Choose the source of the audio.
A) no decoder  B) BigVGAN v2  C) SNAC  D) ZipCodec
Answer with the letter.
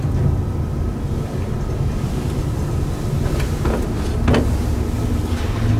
A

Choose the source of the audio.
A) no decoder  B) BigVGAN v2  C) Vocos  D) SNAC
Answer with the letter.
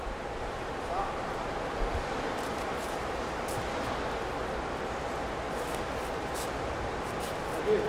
B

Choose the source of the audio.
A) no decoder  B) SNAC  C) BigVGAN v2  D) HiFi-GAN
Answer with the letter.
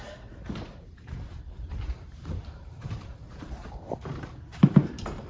C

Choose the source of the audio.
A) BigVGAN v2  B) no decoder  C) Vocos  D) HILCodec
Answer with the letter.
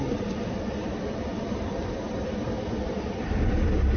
A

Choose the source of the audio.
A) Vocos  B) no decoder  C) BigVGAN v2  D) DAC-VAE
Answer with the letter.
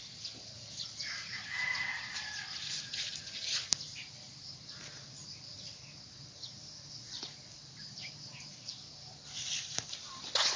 C